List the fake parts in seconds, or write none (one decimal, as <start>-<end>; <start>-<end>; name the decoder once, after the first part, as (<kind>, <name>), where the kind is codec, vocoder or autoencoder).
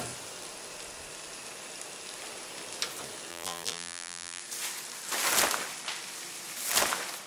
3.3-4.4 (vocoder, BigVGAN v2)